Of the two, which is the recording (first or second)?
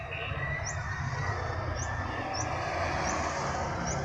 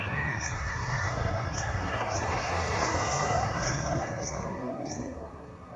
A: first